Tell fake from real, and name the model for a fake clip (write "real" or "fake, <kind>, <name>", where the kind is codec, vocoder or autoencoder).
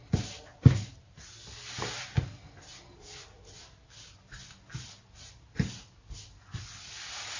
real